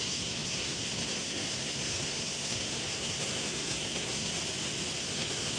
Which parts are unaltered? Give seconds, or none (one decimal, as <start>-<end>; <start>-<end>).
4.3-5.0